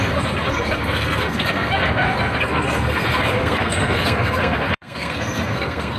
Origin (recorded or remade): remade